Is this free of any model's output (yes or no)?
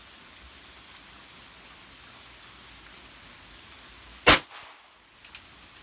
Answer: yes